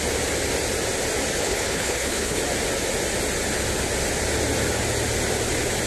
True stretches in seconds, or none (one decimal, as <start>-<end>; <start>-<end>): 0.0-1.4; 2.4-5.9